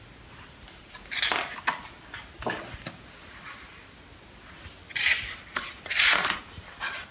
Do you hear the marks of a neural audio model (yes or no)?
no